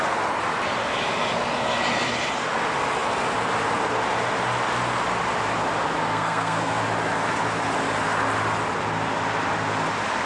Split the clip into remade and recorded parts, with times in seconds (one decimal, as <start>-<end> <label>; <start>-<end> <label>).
0.0-6.0 recorded; 6.0-6.8 remade; 6.8-10.3 recorded